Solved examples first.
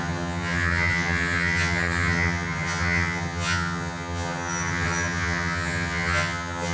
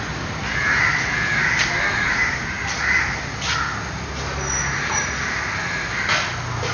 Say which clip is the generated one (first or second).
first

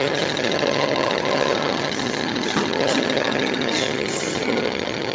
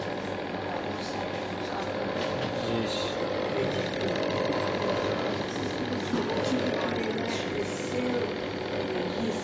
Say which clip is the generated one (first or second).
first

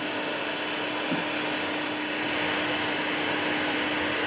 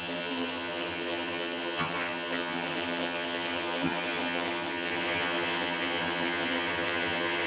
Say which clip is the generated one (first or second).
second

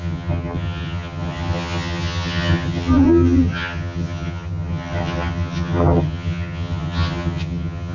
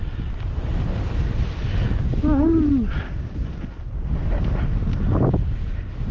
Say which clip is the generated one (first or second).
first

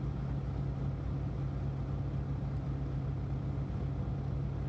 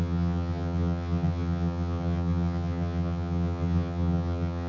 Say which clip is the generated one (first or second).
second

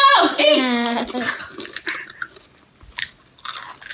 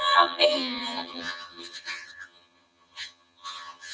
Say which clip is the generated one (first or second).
second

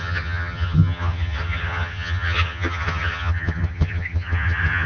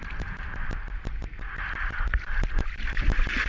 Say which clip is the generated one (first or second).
first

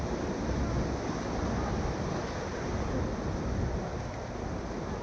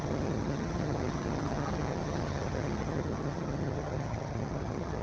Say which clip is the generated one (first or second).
second